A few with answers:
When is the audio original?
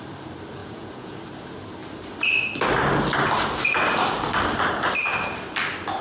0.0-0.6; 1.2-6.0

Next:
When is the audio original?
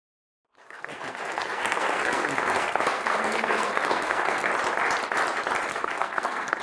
0.0-0.5; 4.5-5.7